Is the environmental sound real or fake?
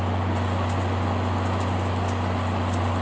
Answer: real